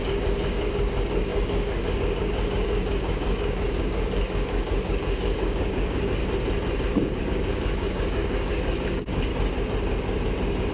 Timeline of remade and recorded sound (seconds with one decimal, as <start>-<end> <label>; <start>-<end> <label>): 0.0-6.2 remade; 6.2-7.2 recorded; 7.2-9.3 remade; 9.3-10.7 recorded